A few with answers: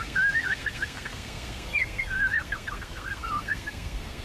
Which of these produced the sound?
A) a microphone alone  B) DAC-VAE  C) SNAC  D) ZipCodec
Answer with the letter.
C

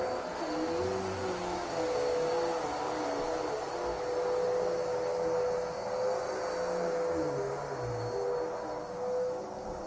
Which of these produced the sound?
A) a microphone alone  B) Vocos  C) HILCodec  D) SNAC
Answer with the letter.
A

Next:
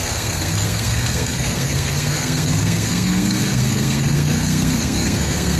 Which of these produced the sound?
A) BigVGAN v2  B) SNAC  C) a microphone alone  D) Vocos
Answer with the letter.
B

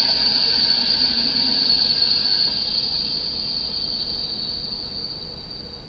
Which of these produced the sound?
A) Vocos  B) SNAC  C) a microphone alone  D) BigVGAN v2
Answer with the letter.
C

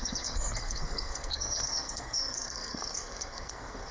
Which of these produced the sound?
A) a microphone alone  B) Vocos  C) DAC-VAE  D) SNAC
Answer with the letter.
D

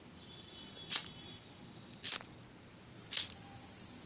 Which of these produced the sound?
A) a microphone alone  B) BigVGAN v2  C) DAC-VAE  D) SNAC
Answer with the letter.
A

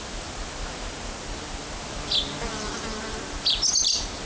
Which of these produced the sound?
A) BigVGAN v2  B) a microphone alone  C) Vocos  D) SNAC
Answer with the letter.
B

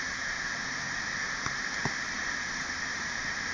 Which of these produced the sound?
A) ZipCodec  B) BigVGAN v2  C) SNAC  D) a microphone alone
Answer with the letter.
D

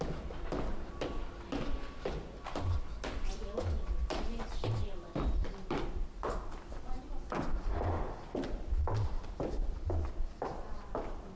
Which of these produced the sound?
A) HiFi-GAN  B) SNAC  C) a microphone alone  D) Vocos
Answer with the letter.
C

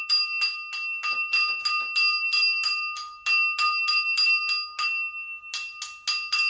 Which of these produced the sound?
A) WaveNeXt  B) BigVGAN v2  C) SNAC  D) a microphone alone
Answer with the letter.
D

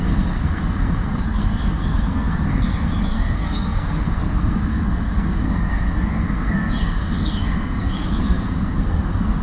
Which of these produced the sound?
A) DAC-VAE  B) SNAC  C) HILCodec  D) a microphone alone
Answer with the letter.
B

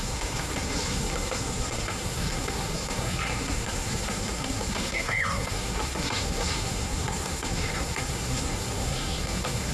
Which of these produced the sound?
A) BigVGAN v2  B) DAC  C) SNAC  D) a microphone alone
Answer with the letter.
C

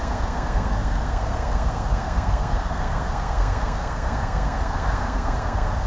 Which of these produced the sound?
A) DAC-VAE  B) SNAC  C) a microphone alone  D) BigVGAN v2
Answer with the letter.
B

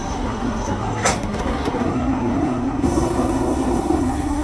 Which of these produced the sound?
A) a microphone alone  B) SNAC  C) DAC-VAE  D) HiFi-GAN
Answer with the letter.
B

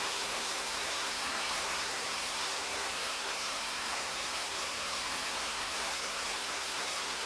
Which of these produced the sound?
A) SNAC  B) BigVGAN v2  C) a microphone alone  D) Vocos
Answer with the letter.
A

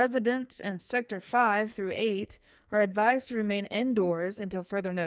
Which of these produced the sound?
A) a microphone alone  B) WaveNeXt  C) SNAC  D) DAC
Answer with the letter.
C